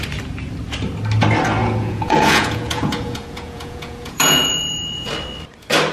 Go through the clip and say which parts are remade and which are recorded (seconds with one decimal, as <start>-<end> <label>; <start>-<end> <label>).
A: 0.0-1.6 recorded; 1.6-5.1 remade; 5.1-5.9 recorded